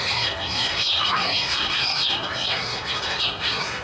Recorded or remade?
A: remade